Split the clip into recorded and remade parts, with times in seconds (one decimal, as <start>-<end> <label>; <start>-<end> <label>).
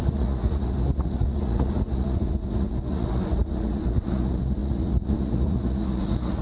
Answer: 0.0-6.4 remade